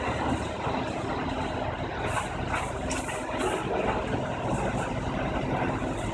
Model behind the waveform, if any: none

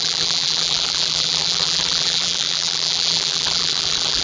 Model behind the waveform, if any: vocoder, BigVGAN v2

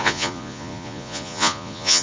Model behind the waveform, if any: vocoder, Vocos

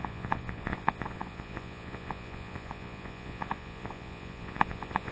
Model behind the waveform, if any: vocoder, Vocos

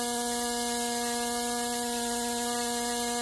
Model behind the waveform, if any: none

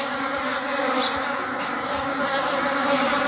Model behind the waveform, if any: none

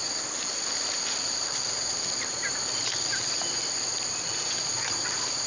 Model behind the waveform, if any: vocoder, BigVGAN v2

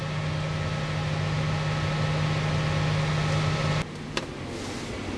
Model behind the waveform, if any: none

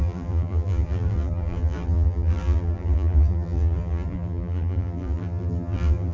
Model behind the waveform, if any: vocoder, BigVGAN v2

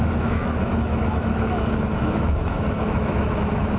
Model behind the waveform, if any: autoencoder, DAC-VAE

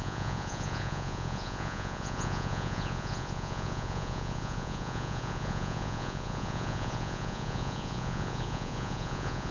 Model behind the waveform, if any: vocoder, Vocos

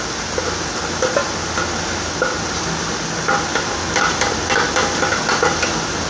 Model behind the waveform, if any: none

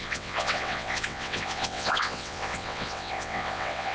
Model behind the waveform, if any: vocoder, WaveNeXt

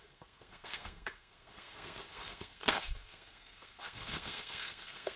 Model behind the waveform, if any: codec, SNAC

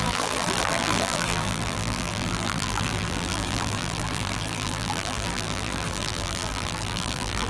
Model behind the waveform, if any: vocoder, BigVGAN v2